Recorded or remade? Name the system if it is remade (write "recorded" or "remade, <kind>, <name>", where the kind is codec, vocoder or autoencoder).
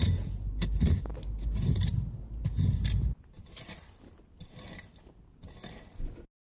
recorded